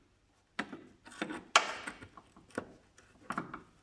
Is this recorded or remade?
recorded